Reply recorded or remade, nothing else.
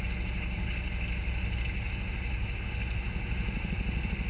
recorded